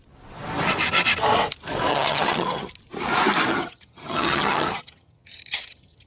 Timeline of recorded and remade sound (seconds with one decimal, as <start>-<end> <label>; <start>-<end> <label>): 0.0-1.9 recorded; 1.9-2.7 remade; 2.7-3.5 recorded; 3.5-6.1 remade